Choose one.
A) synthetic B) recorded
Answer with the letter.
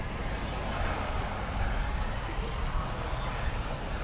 B